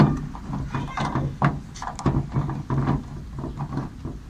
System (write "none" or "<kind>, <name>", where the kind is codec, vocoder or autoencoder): none